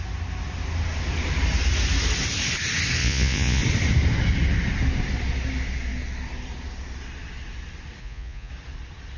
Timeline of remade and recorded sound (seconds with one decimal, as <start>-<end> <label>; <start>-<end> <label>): 0.0-3.0 recorded; 3.0-3.6 remade; 3.6-8.0 recorded; 8.0-8.5 remade; 8.5-9.2 recorded